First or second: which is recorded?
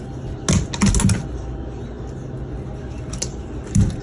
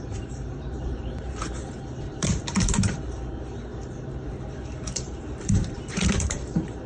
first